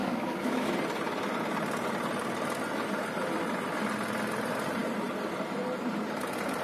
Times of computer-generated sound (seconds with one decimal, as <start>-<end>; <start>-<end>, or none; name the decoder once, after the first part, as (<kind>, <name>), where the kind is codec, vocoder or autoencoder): 0.0-0.7 (codec, DAC)